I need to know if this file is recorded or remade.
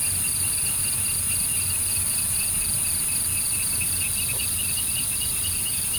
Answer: recorded